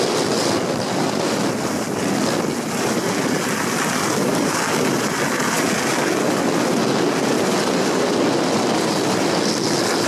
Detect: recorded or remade recorded